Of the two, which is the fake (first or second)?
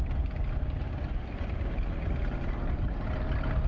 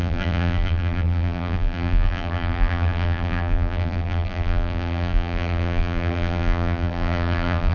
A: second